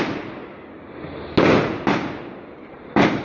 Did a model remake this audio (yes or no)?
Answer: no